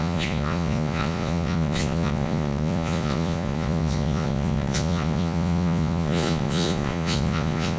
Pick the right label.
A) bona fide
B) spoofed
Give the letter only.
B